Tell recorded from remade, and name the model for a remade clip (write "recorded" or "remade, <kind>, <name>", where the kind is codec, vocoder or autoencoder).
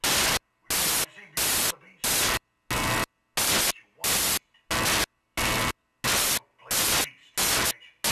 recorded